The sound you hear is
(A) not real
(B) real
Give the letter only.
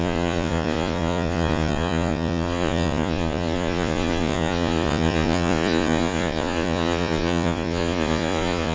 A